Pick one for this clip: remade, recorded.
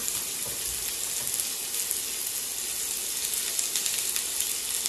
recorded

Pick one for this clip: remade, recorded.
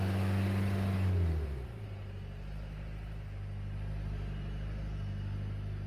recorded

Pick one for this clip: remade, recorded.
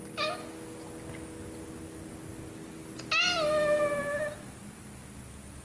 recorded